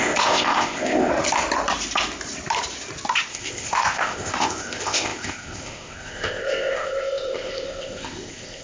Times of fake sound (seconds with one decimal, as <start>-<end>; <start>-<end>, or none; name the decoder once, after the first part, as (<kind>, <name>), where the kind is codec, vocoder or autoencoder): 0.0-1.1 (codec, ZipCodec); 3.3-8.6